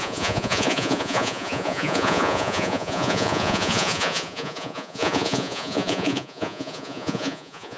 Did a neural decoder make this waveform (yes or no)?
yes